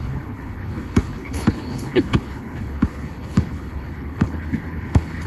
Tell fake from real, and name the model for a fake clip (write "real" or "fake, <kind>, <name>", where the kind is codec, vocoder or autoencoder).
fake, codec, HILCodec